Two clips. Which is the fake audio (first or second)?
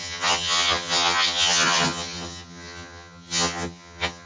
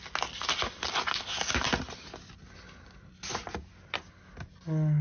first